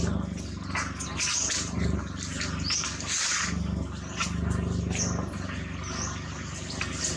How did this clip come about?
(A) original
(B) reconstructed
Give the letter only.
A